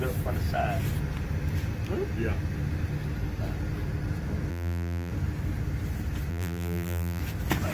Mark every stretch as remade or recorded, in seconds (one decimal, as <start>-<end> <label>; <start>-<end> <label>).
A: 0.0-4.5 recorded; 4.5-5.1 remade; 5.1-6.3 recorded; 6.3-7.2 remade; 7.2-7.7 recorded